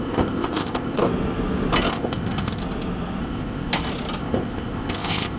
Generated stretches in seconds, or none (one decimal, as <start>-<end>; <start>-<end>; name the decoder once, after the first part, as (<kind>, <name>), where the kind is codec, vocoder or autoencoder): 0.0-1.0 (codec, ZipCodec); 1.9-2.6; 3.2-3.7; 4.2-5.4